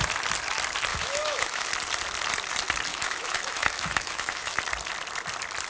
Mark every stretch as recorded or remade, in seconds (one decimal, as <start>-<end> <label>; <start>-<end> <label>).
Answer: 0.0-0.9 recorded; 0.9-1.7 remade; 1.7-2.9 recorded; 2.9-4.6 remade; 4.6-5.7 recorded